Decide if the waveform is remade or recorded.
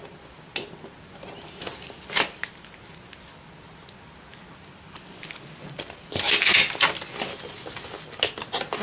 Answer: recorded